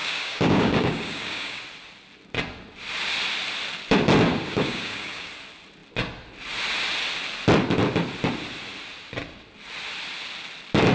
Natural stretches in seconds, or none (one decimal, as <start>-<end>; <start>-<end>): 1.6-4.3; 5.3-10.9